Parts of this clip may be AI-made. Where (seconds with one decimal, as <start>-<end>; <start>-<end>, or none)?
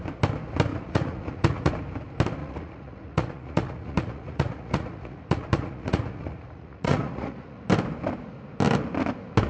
0.7-1.7; 2.4-7.6